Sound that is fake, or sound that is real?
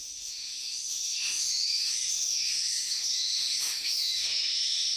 fake